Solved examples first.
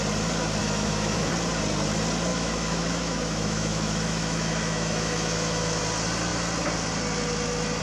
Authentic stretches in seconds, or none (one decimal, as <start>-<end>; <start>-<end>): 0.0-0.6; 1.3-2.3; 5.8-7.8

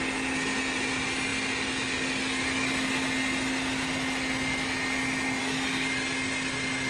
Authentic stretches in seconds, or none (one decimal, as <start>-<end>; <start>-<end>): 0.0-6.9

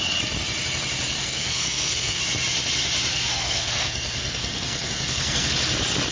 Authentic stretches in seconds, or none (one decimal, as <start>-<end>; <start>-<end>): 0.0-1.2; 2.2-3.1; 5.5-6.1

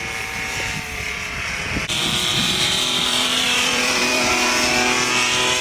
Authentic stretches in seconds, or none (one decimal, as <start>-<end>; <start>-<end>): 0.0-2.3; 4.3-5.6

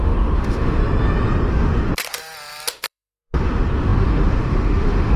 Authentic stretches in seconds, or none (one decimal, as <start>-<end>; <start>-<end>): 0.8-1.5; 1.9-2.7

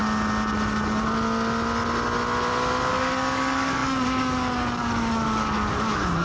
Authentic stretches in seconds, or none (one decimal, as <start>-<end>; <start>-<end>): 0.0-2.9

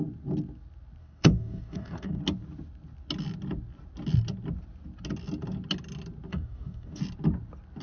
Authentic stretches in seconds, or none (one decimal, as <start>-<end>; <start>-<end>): 0.0-1.0; 2.2-6.3; 7.0-7.8